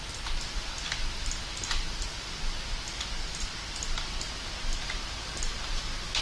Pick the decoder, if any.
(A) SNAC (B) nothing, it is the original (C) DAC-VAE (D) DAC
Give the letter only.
B